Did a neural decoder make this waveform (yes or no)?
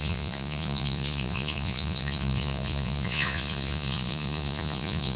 yes